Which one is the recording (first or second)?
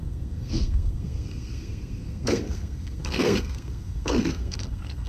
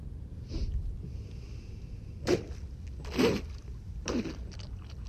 second